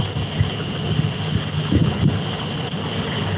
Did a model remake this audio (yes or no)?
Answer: no